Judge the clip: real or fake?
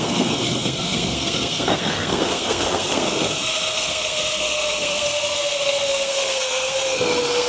fake